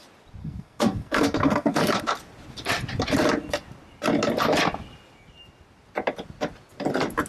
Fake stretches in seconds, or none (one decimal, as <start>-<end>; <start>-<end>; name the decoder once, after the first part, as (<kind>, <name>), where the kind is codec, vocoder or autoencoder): 0.4-2.0 (codec, SNAC)